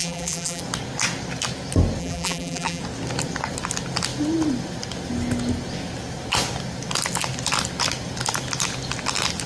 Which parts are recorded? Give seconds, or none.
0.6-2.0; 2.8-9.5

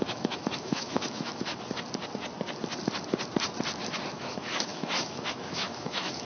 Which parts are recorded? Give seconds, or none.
1.5-4.1

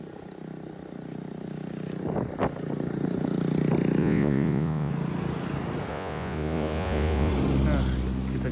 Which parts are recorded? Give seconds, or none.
0.0-4.0; 4.9-5.9; 7.3-8.5

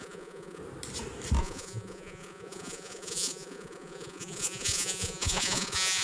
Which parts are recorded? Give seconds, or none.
0.6-1.4

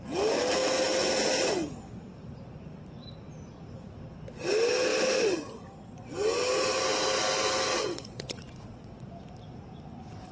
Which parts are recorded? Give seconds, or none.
0.0-7.7; 9.1-10.3

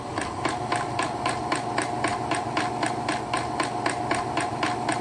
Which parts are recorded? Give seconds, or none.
0.0-5.0